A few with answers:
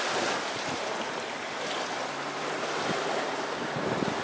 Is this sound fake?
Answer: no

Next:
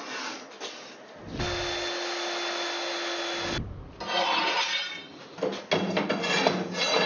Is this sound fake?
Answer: no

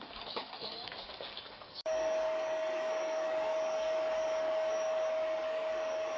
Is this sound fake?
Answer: yes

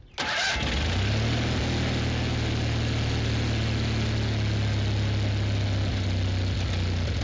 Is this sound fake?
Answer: no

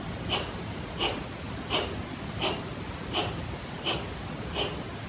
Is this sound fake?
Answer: no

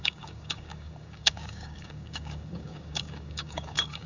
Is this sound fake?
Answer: yes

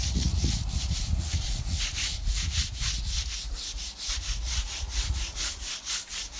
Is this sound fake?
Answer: yes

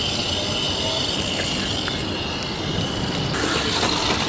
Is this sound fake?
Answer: no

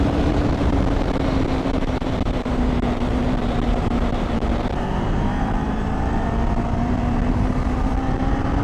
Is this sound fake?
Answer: yes